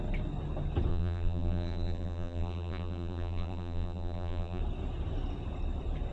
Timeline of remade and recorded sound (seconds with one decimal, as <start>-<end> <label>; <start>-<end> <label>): 0.0-0.9 recorded; 0.9-4.6 remade; 4.6-6.1 recorded